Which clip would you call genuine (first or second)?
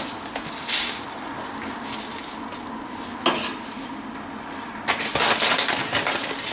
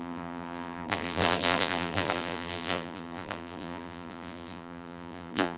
first